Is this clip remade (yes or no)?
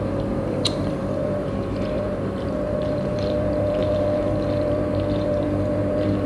yes